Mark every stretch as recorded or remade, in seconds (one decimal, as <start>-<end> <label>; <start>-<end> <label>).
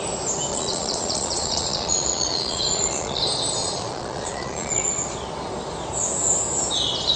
0.0-0.5 recorded; 0.5-3.2 remade; 3.2-3.6 recorded; 3.6-4.9 remade; 4.9-7.2 recorded